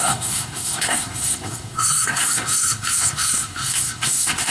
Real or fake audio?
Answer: fake